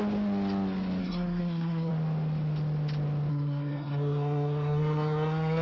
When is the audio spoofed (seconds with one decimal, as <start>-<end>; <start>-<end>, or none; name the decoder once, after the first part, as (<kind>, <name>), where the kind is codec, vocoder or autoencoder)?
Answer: 1.0-1.9 (codec, SNAC); 3.3-5.6